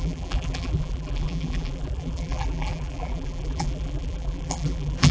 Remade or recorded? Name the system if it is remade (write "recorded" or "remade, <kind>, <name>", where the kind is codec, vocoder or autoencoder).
remade, vocoder, BigVGAN v2